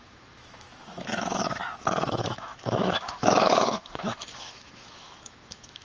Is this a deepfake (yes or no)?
yes